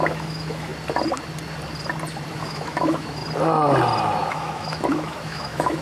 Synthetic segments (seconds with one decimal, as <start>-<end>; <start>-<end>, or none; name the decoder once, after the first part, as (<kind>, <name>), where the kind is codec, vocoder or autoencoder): 0.0-0.7 (autoencoder, DAC-VAE); 2.3-3.2; 4.3-5.8